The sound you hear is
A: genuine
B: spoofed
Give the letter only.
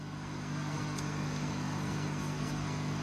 B